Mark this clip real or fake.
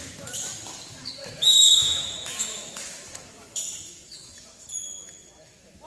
fake